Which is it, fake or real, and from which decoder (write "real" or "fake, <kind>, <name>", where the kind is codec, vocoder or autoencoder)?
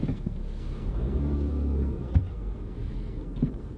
fake, codec, SNAC